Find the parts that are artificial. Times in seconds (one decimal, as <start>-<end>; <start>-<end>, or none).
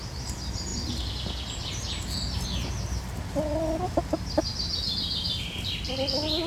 none